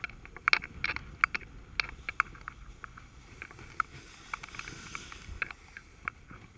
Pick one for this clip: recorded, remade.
recorded